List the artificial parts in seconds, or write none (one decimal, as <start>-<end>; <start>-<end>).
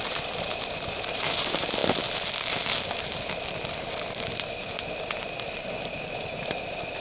0.0-1.8; 2.5-7.0